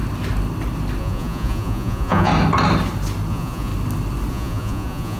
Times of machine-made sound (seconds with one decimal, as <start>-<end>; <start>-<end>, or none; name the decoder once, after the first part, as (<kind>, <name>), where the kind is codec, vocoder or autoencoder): 1.0-2.3 (vocoder, Vocos); 3.3-3.7; 4.3-5.2